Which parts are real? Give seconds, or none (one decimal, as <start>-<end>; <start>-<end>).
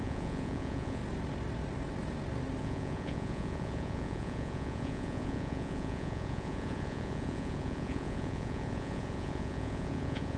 1.0-2.6